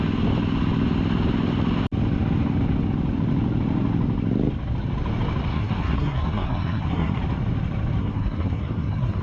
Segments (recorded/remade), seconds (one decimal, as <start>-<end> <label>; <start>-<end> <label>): 0.0-5.5 recorded; 5.5-7.2 remade; 7.2-8.0 recorded; 8.0-9.2 remade